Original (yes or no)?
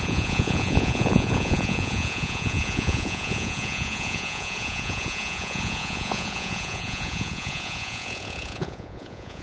no